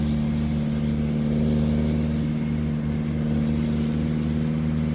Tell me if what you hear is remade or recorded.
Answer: recorded